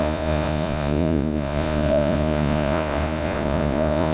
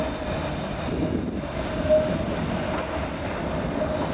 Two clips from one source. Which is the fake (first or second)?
first